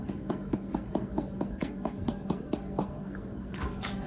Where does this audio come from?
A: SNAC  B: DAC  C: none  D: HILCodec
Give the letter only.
A